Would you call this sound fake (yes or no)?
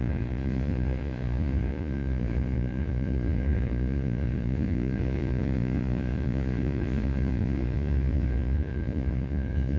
yes